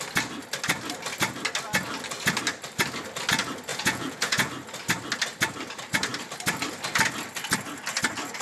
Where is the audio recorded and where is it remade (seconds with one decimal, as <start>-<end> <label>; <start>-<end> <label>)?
0.0-3.7 recorded; 3.7-4.5 remade; 4.5-8.4 recorded